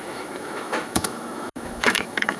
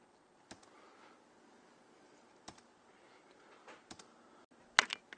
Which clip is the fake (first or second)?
first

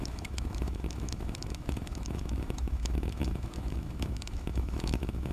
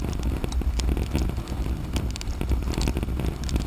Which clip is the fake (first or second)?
first